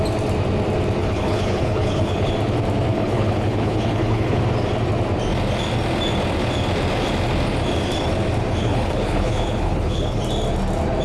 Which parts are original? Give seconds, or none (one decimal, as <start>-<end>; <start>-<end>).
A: 0.0-1.0; 2.3-2.9; 4.4-8.6; 10.2-11.0